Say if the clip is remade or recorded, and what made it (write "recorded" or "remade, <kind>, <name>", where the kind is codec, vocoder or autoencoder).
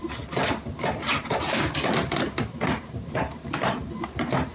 recorded